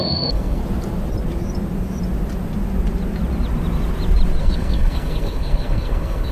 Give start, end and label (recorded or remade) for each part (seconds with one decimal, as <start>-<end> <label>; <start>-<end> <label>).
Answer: 0.0-0.6 remade; 0.6-4.4 recorded; 4.4-6.3 remade